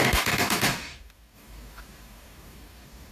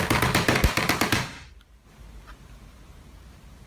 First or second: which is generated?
first